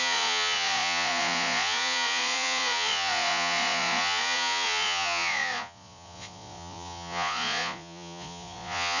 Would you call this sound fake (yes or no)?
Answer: yes